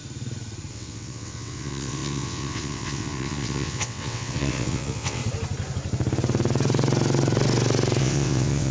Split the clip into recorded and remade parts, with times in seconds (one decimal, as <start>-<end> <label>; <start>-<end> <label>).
0.0-0.7 recorded; 0.7-5.2 remade; 5.2-8.0 recorded; 8.0-8.7 remade